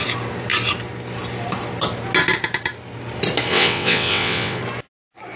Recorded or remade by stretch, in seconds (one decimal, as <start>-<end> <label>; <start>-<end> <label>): 0.0-3.5 recorded; 3.5-4.6 remade; 4.6-5.4 recorded